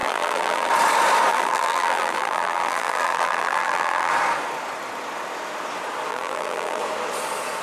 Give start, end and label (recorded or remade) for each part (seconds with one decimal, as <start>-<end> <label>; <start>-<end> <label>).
0.0-0.7 remade; 0.7-1.3 recorded; 1.3-4.1 remade; 4.1-6.1 recorded; 6.1-6.8 remade; 6.8-7.6 recorded